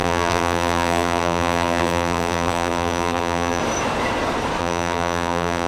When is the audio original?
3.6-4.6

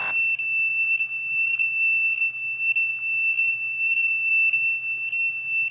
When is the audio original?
0.0-0.7; 2.2-2.9; 4.3-5.7